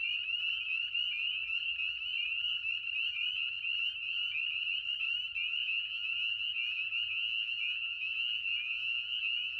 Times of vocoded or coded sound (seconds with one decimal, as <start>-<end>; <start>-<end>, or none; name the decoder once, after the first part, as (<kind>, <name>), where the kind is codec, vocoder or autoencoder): 5.6-9.6 (vocoder, Vocos)